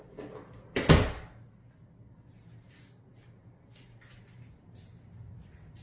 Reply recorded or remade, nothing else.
recorded